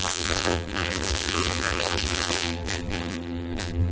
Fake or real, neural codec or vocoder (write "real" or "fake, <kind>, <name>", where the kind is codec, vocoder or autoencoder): fake, vocoder, BigVGAN v2